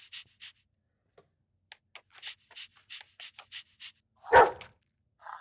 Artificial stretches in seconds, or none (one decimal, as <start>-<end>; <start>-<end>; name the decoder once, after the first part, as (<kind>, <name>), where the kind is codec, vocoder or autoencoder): 2.7-3.9 (vocoder, BigVGAN v2)